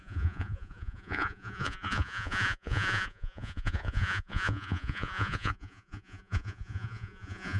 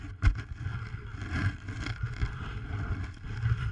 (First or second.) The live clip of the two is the second